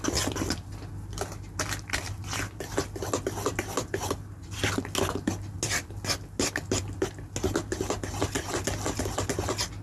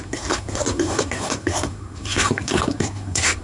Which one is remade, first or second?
second